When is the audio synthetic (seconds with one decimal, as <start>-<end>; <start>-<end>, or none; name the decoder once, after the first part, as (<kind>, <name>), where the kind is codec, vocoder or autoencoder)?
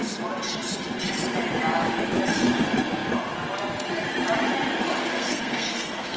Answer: 5.1-6.2 (codec, SNAC)